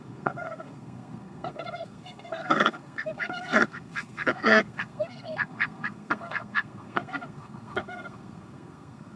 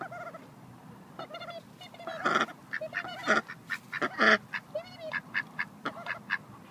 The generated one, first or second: first